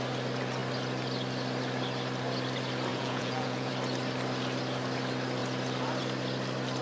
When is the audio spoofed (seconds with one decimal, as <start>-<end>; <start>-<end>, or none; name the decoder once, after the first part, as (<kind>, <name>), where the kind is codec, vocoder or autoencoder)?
2.9-3.7 (vocoder, Vocos)